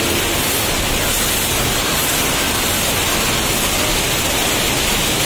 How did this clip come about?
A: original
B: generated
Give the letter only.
A